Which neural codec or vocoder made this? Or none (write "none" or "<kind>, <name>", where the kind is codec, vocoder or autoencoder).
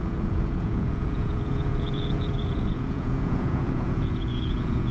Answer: vocoder, Vocos